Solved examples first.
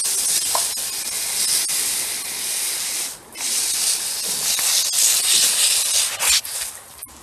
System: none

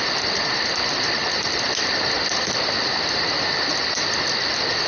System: none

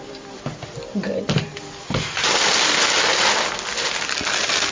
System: vocoder, BigVGAN v2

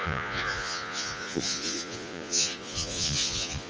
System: vocoder, Vocos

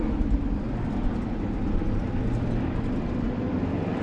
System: none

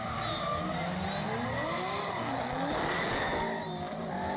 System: none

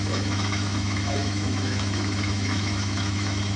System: autoencoder, DAC-VAE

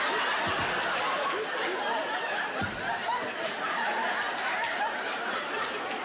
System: none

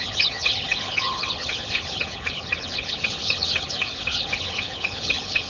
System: codec, HILCodec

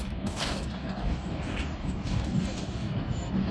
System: codec, DAC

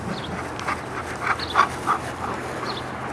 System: none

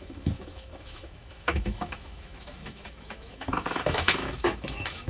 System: autoencoder, DAC-VAE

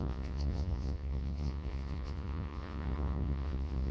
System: vocoder, Vocos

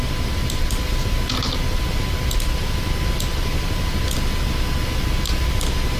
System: none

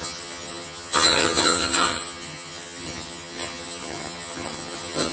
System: vocoder, HiFi-GAN